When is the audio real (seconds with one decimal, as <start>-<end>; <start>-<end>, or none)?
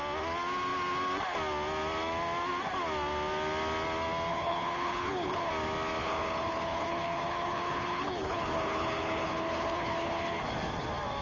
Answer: 0.0-4.3; 5.5-6.0; 10.4-11.2